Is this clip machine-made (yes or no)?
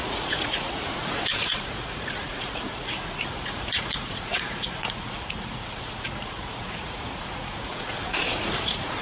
yes